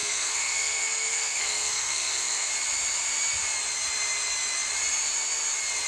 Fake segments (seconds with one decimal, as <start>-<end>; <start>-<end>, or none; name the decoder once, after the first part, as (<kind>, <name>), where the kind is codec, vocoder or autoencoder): 0.0-2.5 (codec, SNAC)